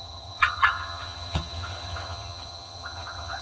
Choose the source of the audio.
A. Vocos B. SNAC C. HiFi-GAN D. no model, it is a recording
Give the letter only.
C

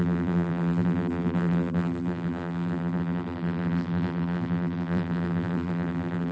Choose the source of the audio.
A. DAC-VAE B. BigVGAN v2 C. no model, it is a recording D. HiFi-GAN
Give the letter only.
B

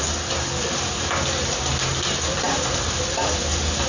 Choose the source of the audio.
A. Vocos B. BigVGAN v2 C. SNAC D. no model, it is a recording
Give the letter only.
D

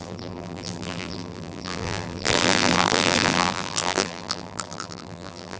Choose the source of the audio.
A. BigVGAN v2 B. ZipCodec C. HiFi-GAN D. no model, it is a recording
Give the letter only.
A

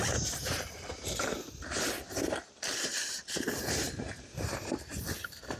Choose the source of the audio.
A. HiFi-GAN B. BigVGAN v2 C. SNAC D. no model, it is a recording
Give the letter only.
B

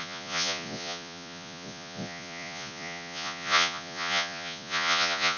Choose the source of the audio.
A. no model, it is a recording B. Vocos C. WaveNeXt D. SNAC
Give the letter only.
B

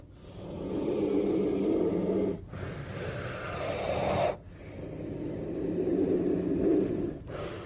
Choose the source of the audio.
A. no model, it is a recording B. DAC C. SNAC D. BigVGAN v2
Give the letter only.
A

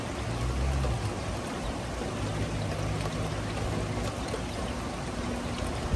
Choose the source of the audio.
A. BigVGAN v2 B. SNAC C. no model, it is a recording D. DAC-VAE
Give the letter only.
C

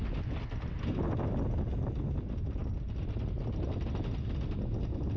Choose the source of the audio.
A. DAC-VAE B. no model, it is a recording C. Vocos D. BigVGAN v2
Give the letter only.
B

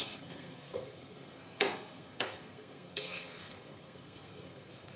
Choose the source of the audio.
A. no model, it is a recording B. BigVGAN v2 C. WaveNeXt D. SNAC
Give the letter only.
D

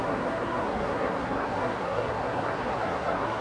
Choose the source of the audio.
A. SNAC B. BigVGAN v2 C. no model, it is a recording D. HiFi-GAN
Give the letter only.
A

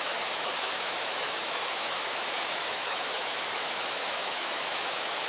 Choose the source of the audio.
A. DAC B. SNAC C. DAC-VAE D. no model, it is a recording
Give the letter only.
C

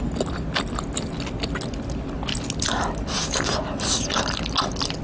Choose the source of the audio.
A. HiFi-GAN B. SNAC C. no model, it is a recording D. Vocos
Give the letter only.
C